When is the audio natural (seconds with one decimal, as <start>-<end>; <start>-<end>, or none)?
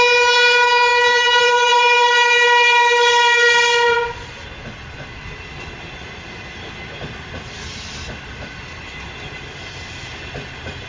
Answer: 0.0-10.9